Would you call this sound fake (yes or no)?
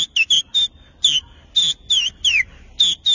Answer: no